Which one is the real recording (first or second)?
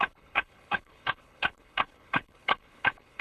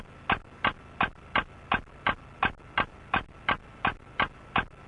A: second